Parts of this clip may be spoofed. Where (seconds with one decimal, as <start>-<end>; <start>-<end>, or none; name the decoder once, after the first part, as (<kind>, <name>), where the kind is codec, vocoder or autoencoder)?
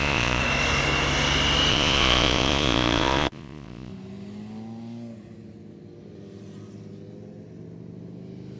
0.0-0.4 (vocoder, Vocos); 1.7-3.9